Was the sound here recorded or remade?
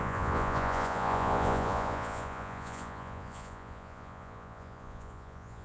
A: remade